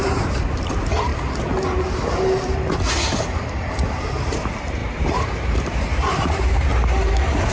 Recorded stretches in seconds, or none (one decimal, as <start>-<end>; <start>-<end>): 1.1-3.9